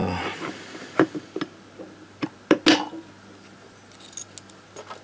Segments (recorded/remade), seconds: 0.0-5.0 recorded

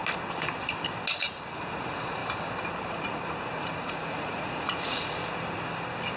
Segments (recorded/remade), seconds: 0.0-1.5 recorded; 1.5-2.2 remade; 2.2-2.9 recorded; 2.9-5.2 remade; 5.2-6.2 recorded

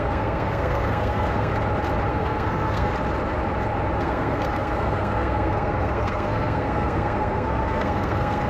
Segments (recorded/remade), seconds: 0.0-1.5 remade; 1.5-2.1 recorded; 2.1-2.9 remade; 2.9-4.0 recorded; 4.0-8.5 remade

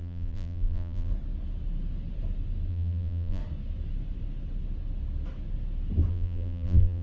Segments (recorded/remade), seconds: 0.0-1.1 remade; 1.1-2.7 recorded; 2.7-3.4 remade; 3.4-6.1 recorded; 6.1-7.0 remade

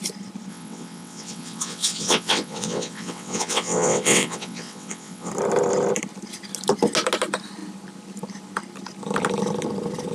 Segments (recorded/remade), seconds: 0.0-0.5 recorded; 0.5-5.3 remade; 5.3-10.1 recorded